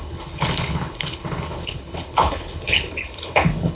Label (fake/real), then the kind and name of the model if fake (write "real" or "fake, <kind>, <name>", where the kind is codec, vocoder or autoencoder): fake, codec, HILCodec